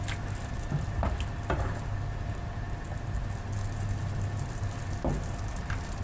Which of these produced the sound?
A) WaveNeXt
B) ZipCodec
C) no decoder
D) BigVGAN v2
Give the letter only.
C